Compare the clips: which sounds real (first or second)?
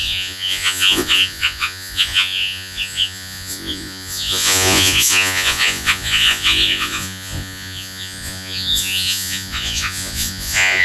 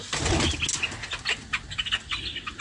second